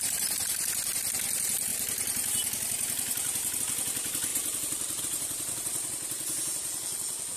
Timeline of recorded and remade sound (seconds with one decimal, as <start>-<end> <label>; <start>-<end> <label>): 0.0-1.7 recorded; 1.7-3.6 remade; 3.6-4.3 recorded; 4.3-5.0 remade; 5.0-7.4 recorded

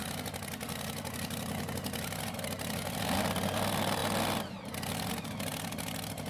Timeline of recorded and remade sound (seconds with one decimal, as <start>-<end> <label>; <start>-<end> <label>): 0.0-4.0 remade; 4.0-5.1 recorded; 5.1-5.5 remade; 5.5-6.3 recorded